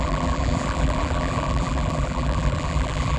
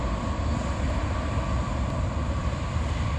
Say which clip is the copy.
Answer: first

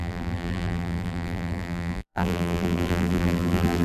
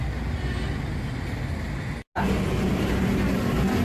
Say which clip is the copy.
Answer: first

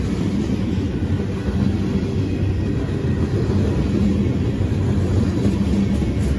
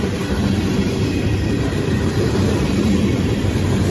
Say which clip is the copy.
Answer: second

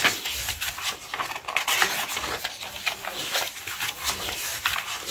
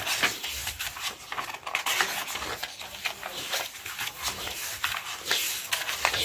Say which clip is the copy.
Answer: first